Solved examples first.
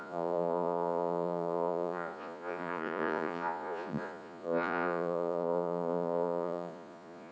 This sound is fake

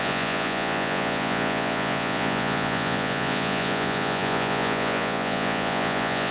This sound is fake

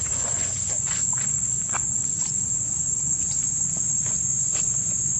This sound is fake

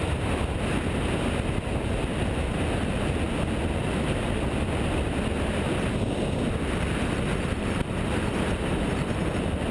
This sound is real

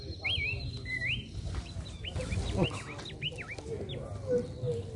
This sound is real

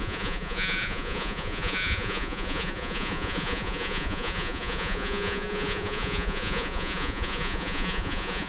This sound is fake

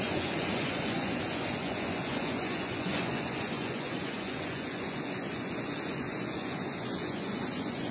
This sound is fake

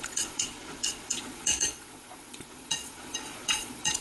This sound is fake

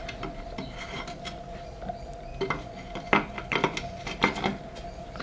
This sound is real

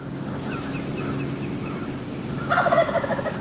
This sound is real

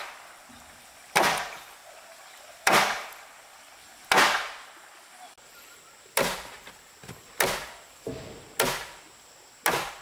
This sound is real